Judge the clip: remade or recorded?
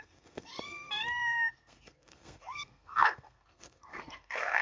remade